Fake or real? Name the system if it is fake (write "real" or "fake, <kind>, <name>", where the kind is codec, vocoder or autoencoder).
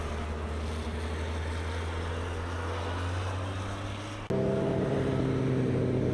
real